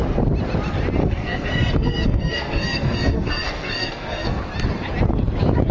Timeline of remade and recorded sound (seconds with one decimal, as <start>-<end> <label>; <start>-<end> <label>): 0.0-1.0 recorded; 1.0-4.4 remade; 4.4-5.7 recorded